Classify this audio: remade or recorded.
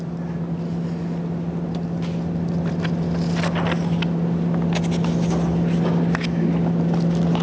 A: recorded